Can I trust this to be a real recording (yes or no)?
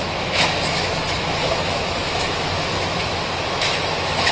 no